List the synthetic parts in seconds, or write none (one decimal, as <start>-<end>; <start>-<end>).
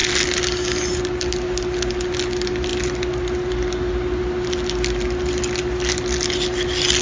none